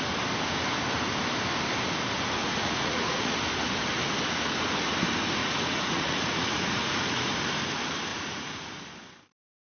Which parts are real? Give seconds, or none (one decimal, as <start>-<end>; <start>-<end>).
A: 0.0-2.4; 3.3-5.4; 7.2-8.1; 8.8-9.7